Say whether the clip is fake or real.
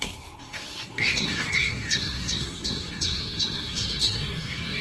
fake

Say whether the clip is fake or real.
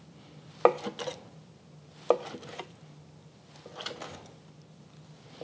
real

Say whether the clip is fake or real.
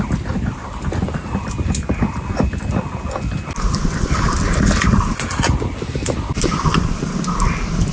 real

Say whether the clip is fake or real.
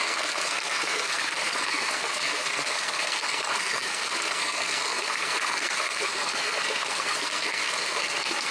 fake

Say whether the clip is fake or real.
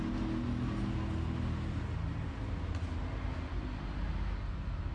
real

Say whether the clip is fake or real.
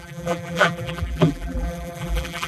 fake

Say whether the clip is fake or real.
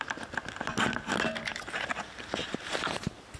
real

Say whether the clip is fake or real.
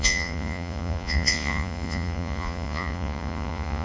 fake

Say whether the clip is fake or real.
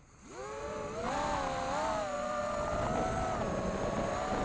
real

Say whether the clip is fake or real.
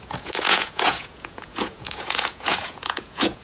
fake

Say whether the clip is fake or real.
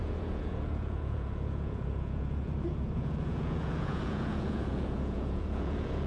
fake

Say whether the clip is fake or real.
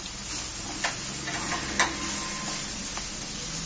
real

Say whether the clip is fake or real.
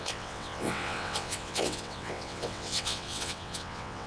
fake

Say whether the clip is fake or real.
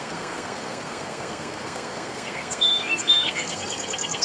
fake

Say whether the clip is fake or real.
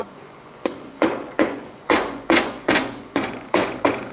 fake